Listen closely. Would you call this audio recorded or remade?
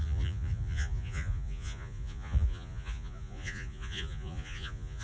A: remade